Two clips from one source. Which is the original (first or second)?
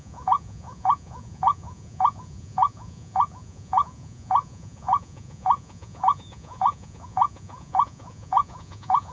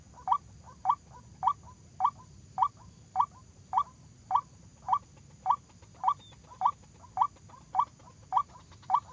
second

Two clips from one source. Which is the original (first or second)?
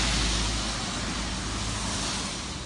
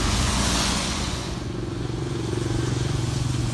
first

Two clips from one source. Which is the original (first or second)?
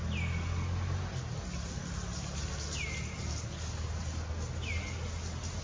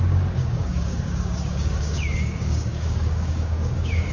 first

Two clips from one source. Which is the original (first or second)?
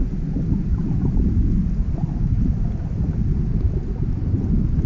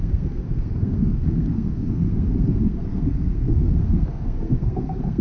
first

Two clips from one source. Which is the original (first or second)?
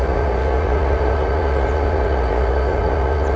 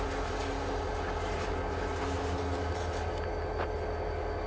second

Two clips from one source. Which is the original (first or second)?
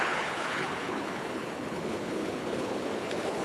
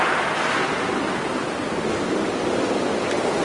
second